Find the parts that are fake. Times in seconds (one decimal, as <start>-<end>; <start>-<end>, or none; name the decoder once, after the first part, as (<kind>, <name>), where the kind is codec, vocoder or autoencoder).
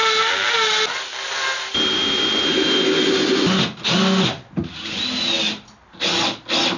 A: none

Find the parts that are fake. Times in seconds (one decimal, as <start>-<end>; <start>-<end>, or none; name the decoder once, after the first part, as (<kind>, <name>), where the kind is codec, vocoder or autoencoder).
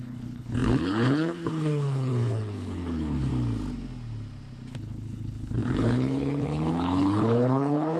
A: 0.0-3.3 (codec, HILCodec); 4.7-8.0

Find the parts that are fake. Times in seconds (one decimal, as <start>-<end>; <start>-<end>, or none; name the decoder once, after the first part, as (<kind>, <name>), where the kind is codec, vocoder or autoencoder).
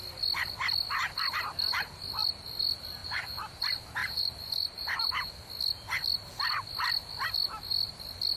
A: 3.0-3.6 (vocoder, BigVGAN v2); 4.0-5.3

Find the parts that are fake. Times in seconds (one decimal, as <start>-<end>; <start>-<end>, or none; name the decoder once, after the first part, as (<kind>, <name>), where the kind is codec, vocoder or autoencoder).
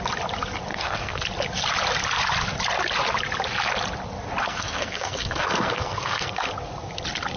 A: 0.7-1.2 (codec, SNAC); 4.4-6.5